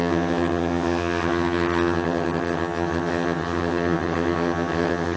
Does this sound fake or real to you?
fake